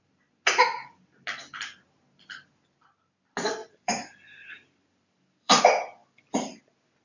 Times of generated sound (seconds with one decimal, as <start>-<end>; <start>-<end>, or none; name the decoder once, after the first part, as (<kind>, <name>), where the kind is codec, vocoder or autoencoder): 3.6-5.6 (vocoder, BigVGAN v2); 6.0-6.6